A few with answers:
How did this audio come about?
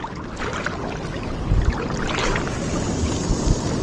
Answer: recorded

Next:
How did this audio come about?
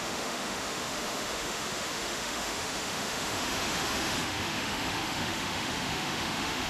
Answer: remade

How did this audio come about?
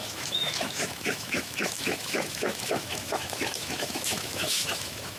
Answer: remade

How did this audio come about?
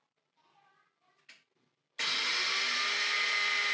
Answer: recorded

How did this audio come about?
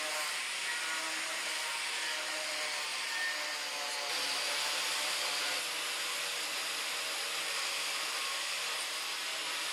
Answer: recorded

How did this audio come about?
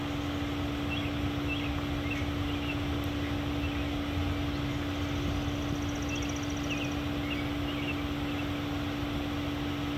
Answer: recorded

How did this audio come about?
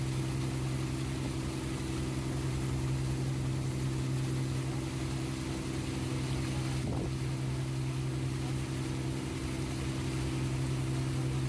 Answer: recorded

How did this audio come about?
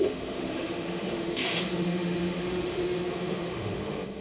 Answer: remade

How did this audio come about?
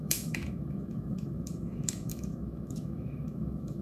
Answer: remade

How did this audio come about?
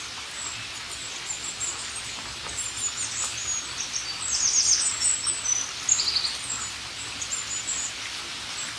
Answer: recorded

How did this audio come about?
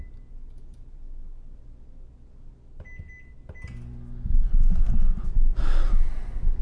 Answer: recorded